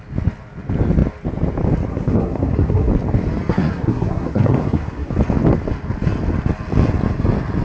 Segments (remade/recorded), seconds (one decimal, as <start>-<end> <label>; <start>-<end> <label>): 0.0-1.9 recorded; 1.9-2.9 remade; 2.9-3.5 recorded; 3.5-5.1 remade; 5.1-7.6 recorded